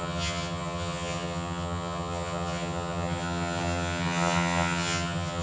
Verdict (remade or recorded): remade